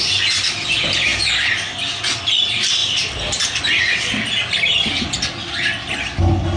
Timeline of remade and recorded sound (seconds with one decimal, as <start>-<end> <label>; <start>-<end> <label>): 0.0-6.6 recorded